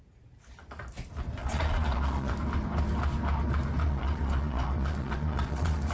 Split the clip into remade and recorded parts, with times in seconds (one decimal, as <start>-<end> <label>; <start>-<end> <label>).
0.0-1.4 recorded; 1.4-2.3 remade; 2.3-3.8 recorded; 3.8-5.9 remade